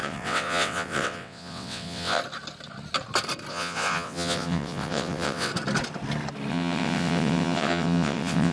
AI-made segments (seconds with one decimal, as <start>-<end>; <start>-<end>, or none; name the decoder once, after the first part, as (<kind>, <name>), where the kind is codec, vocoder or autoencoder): 0.0-2.2 (vocoder, WaveNeXt); 3.5-5.5; 6.5-8.5